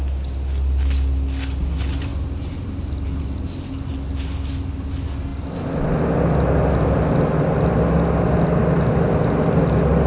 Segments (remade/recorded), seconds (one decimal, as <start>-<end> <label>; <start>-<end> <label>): 0.0-10.1 recorded